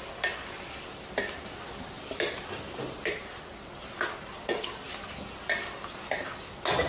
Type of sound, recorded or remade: recorded